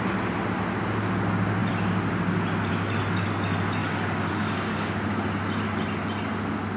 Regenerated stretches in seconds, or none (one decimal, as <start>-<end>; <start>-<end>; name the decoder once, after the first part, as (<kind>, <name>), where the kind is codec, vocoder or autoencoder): 3.8-4.9 (codec, DAC)